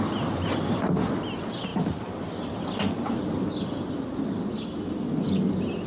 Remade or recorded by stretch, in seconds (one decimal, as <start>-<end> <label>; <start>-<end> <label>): 0.0-5.9 recorded